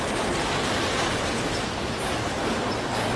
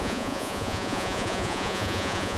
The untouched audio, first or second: first